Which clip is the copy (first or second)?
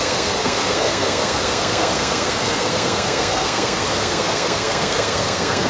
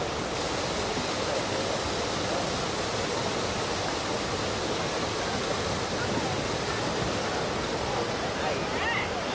first